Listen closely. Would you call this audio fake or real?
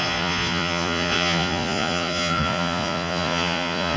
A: fake